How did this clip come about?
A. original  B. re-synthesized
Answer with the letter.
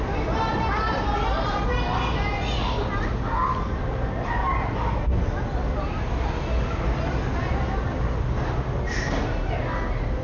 A